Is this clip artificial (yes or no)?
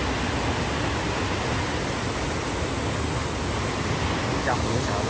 no